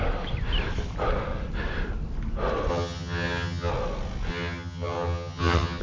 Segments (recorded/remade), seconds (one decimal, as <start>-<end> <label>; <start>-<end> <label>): 0.0-2.7 recorded; 2.7-3.7 remade; 3.7-4.3 recorded; 4.3-5.8 remade